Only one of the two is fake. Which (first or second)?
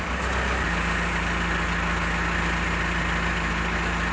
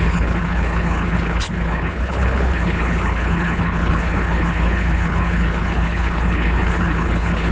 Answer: second